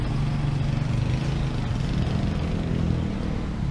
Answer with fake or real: real